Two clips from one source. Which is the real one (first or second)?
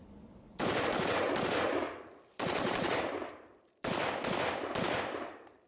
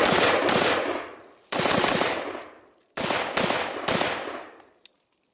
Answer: second